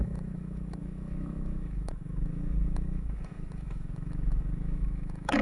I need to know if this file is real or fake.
fake